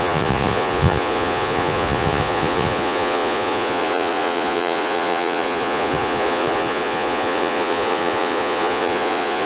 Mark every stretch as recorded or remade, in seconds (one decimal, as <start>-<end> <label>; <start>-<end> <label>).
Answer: 0.0-9.5 remade